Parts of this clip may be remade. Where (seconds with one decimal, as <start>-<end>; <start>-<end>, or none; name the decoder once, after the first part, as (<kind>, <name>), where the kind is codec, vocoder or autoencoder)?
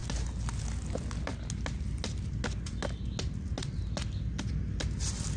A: none